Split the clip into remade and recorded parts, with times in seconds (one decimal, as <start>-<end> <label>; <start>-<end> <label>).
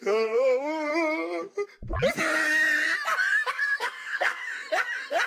0.0-0.9 remade; 0.9-3.5 recorded; 3.5-4.4 remade; 4.4-5.3 recorded